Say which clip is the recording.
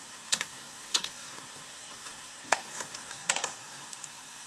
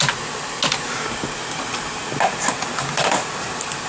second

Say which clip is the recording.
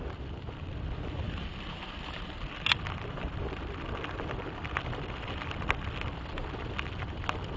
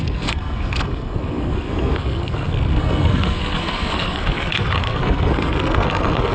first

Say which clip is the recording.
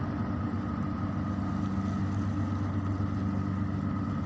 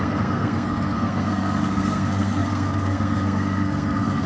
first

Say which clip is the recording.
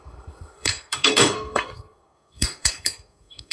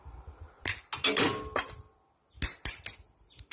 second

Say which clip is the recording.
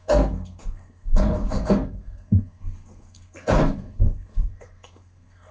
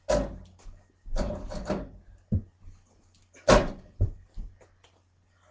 second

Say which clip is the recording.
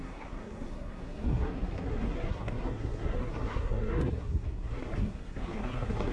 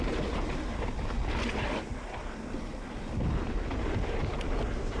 second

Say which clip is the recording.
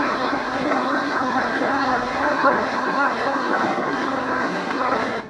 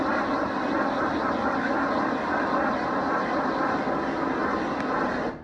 second